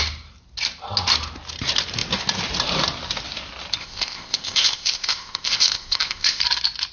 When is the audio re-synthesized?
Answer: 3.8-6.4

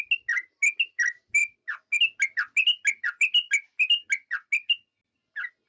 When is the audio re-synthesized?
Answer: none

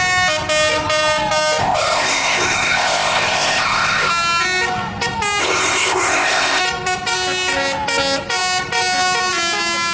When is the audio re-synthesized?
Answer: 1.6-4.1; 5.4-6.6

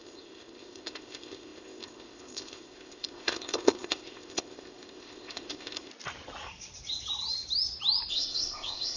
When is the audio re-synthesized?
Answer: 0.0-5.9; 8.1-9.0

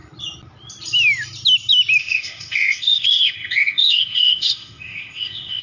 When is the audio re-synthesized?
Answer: 2.0-5.6

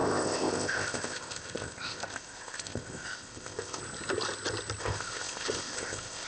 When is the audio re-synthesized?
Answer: 0.0-3.8; 4.8-6.3

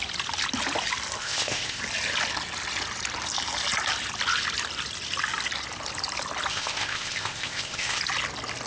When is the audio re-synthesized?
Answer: 1.2-1.8; 6.5-8.0

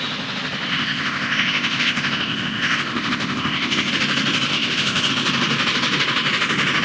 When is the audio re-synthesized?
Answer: 0.7-3.9; 4.5-5.1